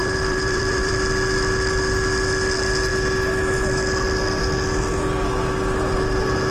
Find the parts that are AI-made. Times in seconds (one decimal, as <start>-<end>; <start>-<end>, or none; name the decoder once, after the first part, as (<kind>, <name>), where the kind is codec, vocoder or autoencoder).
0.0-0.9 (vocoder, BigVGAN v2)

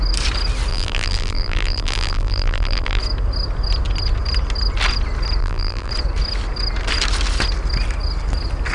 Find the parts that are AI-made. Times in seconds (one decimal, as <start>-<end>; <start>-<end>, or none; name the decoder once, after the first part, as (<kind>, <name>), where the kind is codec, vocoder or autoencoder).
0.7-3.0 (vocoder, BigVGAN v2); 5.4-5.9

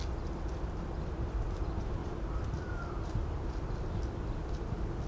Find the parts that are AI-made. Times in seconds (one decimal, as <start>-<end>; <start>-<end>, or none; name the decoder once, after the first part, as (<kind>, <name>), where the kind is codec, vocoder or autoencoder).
2.0-3.4 (vocoder, BigVGAN v2)

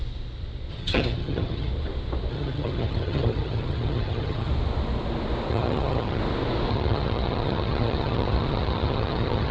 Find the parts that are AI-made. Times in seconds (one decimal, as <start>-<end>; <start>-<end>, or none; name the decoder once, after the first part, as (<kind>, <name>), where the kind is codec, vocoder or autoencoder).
0.7-1.7 (vocoder, HiFi-GAN); 2.3-4.5; 5.5-6.2; 6.7-9.5

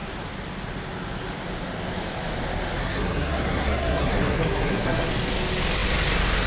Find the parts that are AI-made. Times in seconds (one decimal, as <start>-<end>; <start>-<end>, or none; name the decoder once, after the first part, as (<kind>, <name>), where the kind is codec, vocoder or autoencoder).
2.8-5.1 (codec, SNAC)